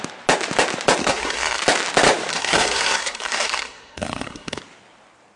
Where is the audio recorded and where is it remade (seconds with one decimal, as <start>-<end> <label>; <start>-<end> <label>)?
0.0-1.0 recorded; 1.0-1.6 remade; 1.6-2.3 recorded; 2.3-4.6 remade; 4.6-5.4 recorded